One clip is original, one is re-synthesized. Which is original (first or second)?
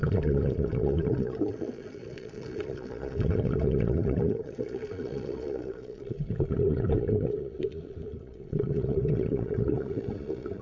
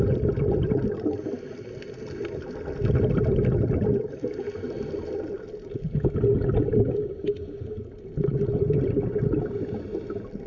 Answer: second